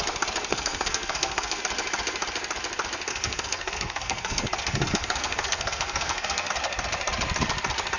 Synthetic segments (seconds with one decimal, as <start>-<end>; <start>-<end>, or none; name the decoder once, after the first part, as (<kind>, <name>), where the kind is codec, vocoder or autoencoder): 0.5-1.6 (codec, SNAC); 3.1-6.5